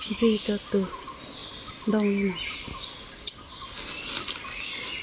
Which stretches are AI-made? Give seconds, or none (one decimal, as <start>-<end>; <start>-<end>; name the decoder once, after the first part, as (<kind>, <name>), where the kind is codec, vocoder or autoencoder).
none